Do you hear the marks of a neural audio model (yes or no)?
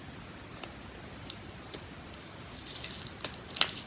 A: no